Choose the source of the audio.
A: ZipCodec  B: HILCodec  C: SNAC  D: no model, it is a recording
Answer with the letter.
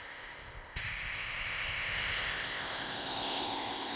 A